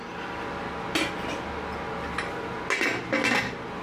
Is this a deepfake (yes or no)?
no